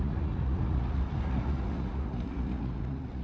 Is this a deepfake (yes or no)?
yes